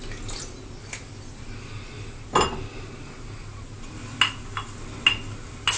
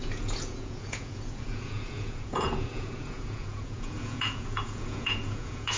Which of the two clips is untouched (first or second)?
first